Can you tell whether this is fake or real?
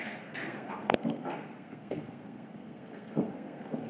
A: fake